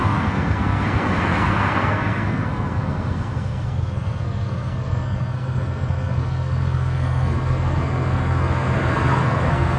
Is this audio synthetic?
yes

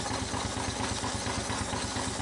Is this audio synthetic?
no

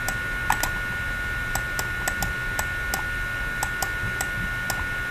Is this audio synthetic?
no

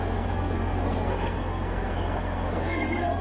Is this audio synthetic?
yes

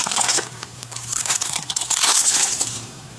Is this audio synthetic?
yes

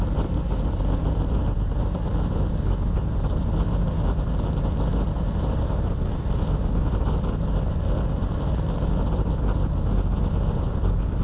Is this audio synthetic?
no